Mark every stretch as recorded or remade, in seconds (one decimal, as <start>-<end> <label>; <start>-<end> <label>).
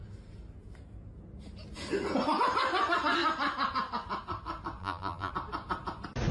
0.0-4.8 recorded; 4.8-5.3 remade; 5.3-6.3 recorded